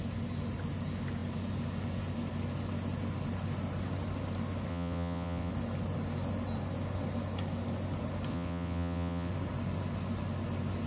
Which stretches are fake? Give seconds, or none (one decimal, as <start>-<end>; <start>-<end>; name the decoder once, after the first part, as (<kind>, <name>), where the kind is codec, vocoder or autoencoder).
4.7-5.5 (vocoder, WaveNeXt); 8.3-9.3